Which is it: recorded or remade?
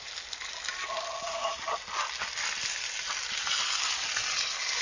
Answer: recorded